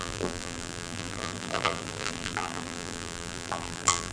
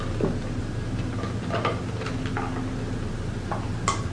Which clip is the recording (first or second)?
second